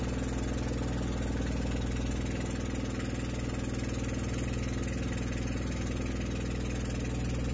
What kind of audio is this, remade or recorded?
recorded